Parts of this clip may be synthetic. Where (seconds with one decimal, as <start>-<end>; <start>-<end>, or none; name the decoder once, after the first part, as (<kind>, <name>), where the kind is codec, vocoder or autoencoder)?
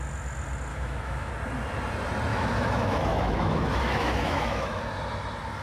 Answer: 0.7-1.3 (autoencoder, DAC-VAE); 2.3-4.8